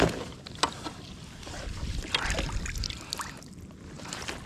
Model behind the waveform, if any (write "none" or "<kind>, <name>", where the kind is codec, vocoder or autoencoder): none